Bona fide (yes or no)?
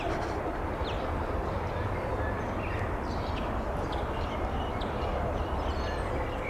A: yes